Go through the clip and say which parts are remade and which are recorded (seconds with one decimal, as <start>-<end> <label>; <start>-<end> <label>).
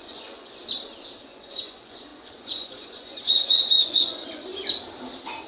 0.0-0.6 remade; 0.6-1.2 recorded; 1.2-4.5 remade; 4.5-5.5 recorded